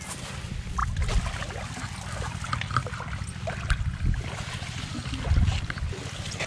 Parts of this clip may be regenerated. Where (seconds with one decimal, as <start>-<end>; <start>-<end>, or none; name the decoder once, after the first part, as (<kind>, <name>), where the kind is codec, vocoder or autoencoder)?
none